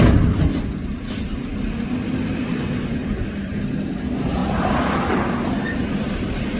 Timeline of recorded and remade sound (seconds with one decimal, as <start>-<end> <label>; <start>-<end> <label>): 0.0-3.0 recorded; 3.0-3.6 remade; 3.6-6.6 recorded